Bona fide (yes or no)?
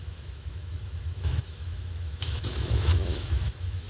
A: no